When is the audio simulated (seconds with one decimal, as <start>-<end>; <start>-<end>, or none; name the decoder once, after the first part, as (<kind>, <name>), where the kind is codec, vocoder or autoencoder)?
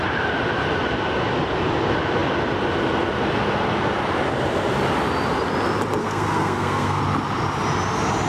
6.0-7.0 (codec, SNAC)